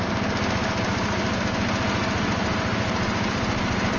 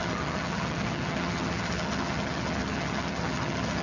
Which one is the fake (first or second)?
second